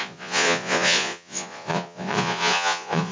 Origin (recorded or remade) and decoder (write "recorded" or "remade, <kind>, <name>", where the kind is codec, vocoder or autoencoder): remade, vocoder, Vocos